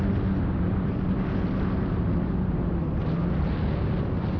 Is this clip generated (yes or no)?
no